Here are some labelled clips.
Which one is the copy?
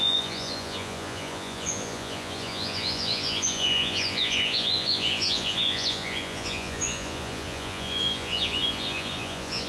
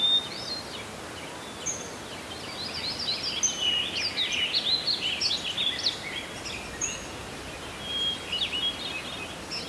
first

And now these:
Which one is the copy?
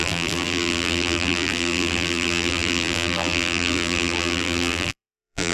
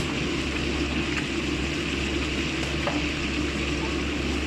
first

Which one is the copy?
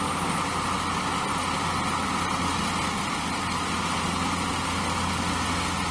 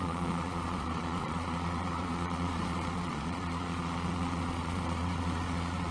second